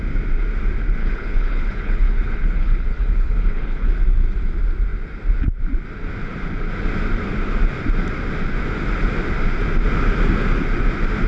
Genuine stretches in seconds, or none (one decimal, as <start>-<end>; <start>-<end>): 0.0-1.0; 3.9-11.3